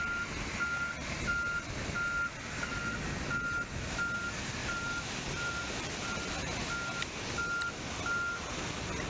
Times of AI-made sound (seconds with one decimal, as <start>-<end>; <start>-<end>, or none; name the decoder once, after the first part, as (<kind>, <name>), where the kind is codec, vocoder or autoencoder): 4.6-6.0 (vocoder, BigVGAN v2)